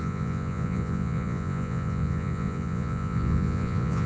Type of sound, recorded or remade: remade